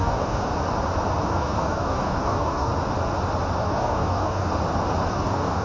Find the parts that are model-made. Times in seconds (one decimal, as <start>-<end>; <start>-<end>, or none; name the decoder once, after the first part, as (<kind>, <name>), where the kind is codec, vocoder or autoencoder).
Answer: 0.0-0.5 (codec, DAC); 1.3-2.7; 3.6-4.5; 5.1-5.6